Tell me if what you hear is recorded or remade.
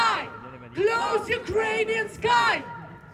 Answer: recorded